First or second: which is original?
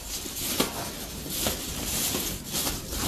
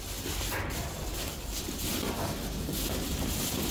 second